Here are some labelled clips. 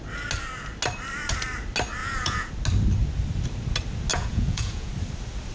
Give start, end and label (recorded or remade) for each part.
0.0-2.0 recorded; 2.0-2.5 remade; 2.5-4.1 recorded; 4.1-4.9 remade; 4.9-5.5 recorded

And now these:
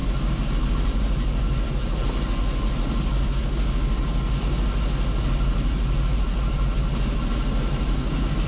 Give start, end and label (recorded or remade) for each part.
0.0-8.5 recorded

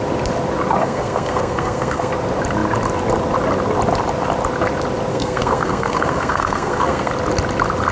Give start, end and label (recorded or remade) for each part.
0.0-0.8 recorded; 0.8-2.1 remade; 2.1-5.1 recorded; 5.1-7.1 remade; 7.1-7.9 recorded

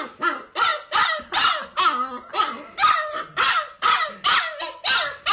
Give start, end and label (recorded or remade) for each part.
0.0-5.3 recorded

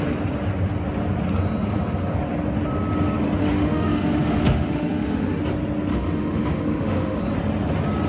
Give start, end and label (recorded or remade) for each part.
0.0-3.4 recorded; 3.4-5.4 remade; 5.4-5.9 recorded; 5.9-7.2 remade; 7.2-8.1 recorded

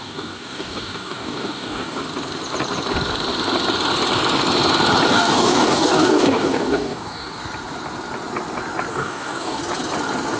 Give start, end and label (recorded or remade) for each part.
0.0-2.0 remade; 2.0-5.1 recorded; 5.1-7.4 remade; 7.4-8.9 recorded; 8.9-9.6 remade; 9.6-10.4 recorded

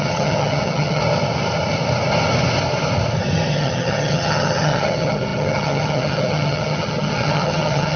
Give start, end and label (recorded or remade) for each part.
0.0-1.0 remade; 1.0-3.5 recorded; 3.5-8.0 remade